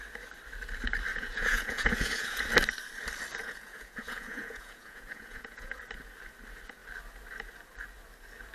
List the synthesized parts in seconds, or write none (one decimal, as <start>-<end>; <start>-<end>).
1.1-2.4; 3.4-5.8